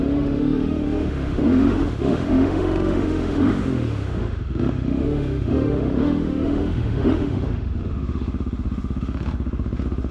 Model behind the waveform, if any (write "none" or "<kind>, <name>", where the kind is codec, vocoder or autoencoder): autoencoder, DAC-VAE